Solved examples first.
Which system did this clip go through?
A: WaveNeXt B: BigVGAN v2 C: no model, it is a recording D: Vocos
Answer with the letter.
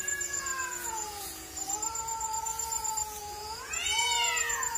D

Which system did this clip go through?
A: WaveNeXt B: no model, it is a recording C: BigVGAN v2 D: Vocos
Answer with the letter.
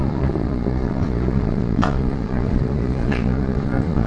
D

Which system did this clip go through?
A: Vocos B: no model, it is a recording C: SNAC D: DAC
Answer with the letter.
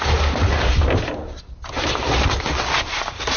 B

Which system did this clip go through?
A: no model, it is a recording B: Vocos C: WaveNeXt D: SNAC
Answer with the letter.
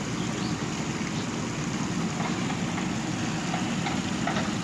A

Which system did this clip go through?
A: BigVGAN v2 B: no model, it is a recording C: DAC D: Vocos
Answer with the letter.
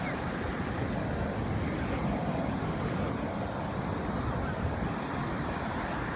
B